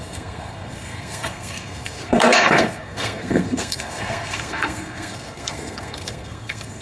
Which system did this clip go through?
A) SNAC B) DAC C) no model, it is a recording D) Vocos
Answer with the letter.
A